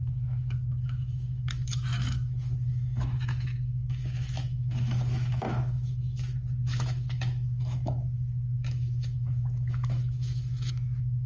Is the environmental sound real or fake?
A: fake